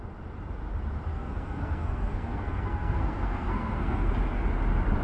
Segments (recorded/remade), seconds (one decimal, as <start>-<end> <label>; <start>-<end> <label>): 0.0-1.1 recorded; 1.1-4.1 remade; 4.1-5.0 recorded